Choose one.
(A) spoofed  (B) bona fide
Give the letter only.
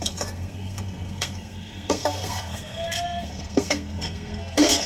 A